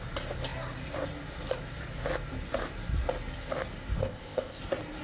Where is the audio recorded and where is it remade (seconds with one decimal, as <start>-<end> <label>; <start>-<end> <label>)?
0.0-4.0 recorded; 4.0-4.6 remade; 4.6-5.0 recorded

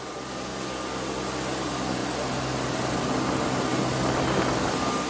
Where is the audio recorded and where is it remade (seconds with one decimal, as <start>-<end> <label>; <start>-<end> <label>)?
0.0-5.1 recorded

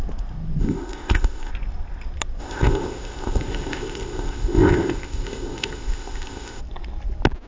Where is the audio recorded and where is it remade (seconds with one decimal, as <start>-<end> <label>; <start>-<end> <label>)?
0.0-0.6 recorded; 0.6-1.5 remade; 1.5-2.4 recorded; 2.4-6.6 remade; 6.6-7.5 recorded

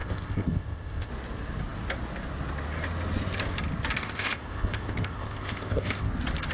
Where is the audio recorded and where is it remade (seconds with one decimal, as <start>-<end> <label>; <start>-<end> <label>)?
0.0-1.1 remade; 1.1-4.0 recorded; 4.0-6.1 remade; 6.1-6.5 recorded

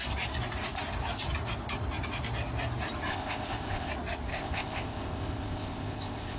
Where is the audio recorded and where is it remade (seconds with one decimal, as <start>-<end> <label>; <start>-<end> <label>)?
0.0-3.1 recorded; 3.1-3.9 remade; 3.9-4.3 recorded; 4.3-6.4 remade

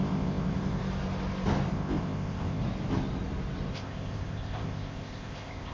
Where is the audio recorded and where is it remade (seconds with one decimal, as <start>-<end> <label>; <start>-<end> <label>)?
0.0-0.8 remade; 0.8-1.7 recorded; 1.7-2.6 remade; 2.6-3.7 recorded; 3.7-5.7 remade